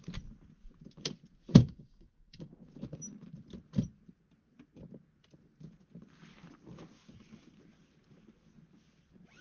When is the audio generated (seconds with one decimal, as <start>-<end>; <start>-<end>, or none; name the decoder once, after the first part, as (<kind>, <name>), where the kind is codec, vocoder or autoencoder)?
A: 1.6-2.5 (codec, DAC)